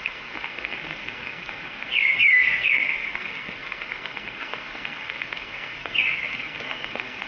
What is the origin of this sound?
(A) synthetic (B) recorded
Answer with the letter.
A